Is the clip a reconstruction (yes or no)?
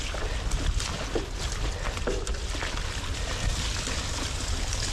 no